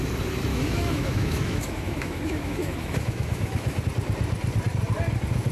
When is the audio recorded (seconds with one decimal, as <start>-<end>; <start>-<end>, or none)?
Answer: 0.0-0.5; 3.8-5.5